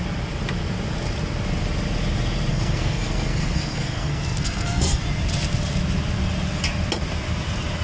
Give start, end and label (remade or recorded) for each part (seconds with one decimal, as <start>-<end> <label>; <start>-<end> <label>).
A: 0.0-2.5 recorded; 2.5-5.0 remade; 5.0-7.8 recorded